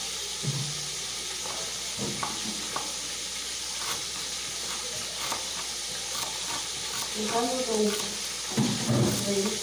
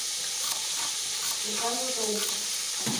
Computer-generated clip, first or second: second